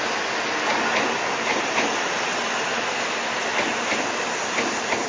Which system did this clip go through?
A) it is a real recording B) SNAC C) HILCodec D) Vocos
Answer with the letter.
A